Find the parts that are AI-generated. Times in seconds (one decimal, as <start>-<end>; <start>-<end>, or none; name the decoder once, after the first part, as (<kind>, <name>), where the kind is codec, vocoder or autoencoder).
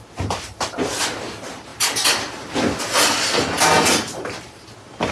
none